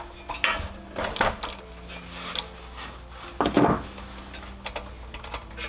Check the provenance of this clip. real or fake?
real